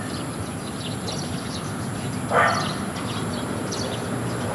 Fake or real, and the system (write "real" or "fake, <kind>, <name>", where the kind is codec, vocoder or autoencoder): real